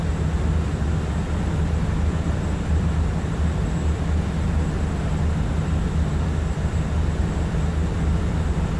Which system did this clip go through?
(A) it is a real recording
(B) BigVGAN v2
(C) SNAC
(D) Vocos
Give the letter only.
A